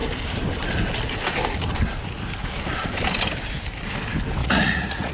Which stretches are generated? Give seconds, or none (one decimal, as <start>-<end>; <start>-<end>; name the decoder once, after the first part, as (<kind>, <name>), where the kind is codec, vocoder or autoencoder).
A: 4.4-5.1 (vocoder, Vocos)